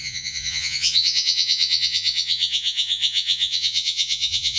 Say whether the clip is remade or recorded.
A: remade